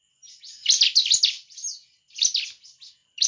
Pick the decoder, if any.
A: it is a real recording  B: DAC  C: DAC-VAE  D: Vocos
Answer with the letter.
A